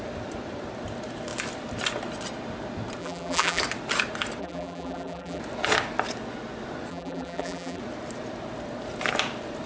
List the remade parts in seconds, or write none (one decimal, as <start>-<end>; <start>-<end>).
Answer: 3.0-3.6; 4.4-5.4; 6.9-7.8